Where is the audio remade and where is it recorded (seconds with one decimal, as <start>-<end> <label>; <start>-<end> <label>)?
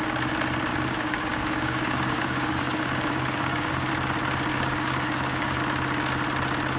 0.0-0.7 recorded; 0.7-3.9 remade; 3.9-4.5 recorded; 4.5-5.6 remade; 5.6-6.8 recorded